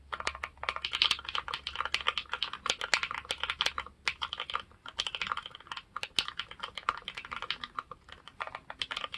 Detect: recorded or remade recorded